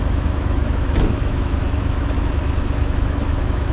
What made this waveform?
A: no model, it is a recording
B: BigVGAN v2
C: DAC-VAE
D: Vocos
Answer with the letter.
C